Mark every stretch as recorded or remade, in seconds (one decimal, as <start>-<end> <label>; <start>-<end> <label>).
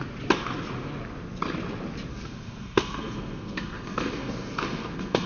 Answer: 0.0-2.1 recorded; 2.1-5.3 remade